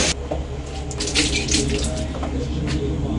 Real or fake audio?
real